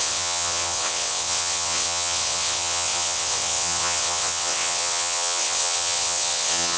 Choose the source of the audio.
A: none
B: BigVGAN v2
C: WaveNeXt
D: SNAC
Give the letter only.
C